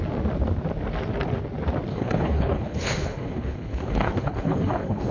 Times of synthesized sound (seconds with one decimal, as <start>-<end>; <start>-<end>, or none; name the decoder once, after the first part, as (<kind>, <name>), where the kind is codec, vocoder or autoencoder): 1.9-5.1 (codec, HILCodec)